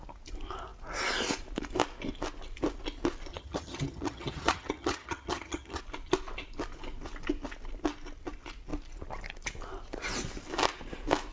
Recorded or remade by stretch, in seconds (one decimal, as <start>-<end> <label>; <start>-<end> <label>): 0.0-3.3 recorded; 3.3-5.8 remade; 5.8-11.3 recorded